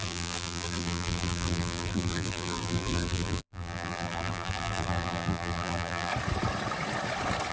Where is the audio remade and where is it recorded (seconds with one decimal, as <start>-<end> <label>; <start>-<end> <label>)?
0.0-6.1 remade; 6.1-7.5 recorded

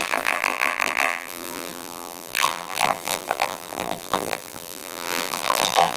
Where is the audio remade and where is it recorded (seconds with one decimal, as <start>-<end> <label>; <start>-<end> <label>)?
0.0-6.0 remade

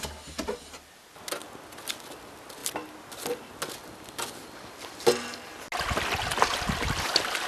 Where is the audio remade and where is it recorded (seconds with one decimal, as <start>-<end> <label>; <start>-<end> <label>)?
0.0-7.5 recorded

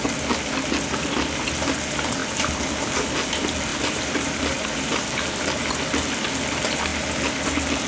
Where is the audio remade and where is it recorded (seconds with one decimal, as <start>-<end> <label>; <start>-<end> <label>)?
0.0-3.7 recorded; 3.7-4.4 remade; 4.4-7.9 recorded

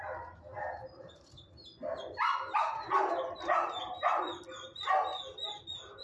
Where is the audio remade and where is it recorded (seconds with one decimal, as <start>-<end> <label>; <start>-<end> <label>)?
0.0-6.0 recorded

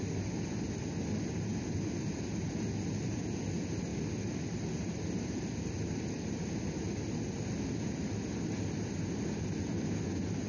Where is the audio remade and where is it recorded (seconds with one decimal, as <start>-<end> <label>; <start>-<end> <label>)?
0.0-1.5 recorded; 1.5-3.5 remade; 3.5-3.9 recorded; 3.9-6.6 remade; 6.6-10.5 recorded

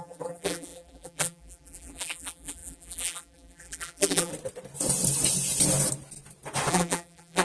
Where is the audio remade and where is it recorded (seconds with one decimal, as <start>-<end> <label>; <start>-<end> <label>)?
0.0-4.3 remade; 4.3-6.7 recorded; 6.7-7.4 remade